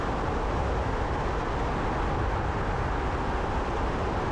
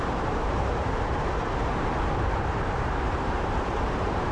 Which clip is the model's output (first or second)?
second